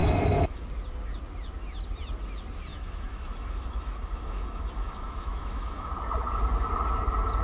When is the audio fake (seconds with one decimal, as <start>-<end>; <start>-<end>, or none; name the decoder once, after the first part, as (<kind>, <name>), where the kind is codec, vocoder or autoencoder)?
0.0-0.6 (autoencoder, DAC-VAE); 2.7-5.9